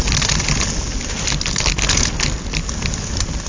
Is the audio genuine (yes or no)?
yes